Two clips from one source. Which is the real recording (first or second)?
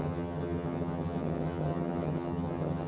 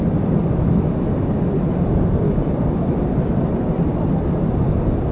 second